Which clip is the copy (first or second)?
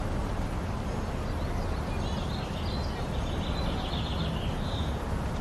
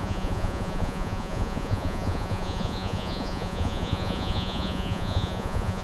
second